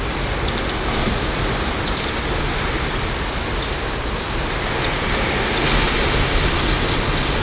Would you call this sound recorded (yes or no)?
yes